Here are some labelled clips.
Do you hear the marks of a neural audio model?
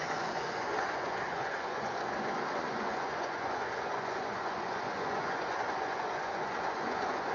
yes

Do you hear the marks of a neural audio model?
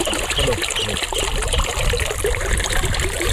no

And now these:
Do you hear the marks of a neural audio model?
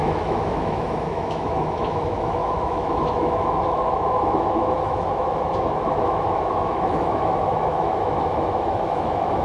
yes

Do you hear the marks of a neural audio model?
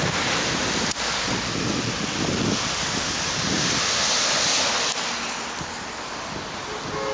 no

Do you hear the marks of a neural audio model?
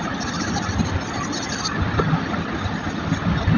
no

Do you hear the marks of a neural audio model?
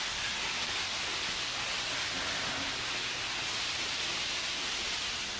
no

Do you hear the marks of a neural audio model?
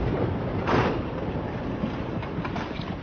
yes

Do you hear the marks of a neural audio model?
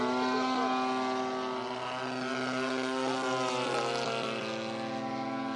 no